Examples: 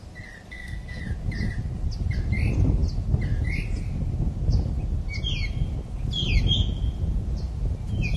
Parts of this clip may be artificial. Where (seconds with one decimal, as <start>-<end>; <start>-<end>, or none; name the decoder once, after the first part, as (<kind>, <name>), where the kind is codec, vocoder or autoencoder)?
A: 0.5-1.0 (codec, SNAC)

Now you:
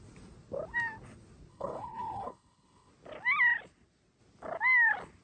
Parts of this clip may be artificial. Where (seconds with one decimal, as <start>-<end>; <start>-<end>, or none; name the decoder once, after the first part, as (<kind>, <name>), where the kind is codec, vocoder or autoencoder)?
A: 1.5-2.9 (codec, HILCodec)

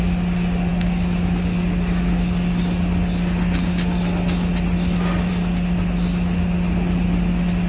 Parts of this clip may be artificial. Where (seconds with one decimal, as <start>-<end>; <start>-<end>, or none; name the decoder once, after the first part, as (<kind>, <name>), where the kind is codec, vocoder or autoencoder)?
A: none

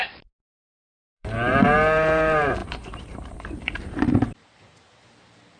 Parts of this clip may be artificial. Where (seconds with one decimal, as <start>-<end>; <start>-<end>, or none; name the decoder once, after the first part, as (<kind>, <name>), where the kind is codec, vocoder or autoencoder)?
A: 1.0-5.6 (vocoder, BigVGAN v2)

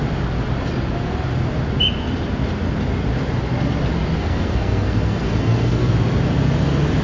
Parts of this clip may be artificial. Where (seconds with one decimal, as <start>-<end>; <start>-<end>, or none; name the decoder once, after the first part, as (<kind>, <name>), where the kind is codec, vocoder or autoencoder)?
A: 4.2-5.9 (codec, SNAC)

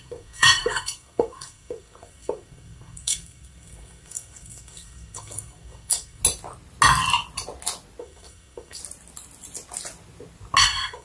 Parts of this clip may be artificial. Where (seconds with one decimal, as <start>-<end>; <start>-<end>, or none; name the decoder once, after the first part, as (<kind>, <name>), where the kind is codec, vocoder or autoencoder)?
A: 0.0-6.2 (codec, SNAC); 8.0-8.8; 10.6-11.0